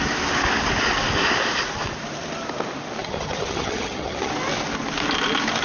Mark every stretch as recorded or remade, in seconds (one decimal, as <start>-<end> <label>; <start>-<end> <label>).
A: 0.0-3.0 recorded; 3.0-4.3 remade; 4.3-5.6 recorded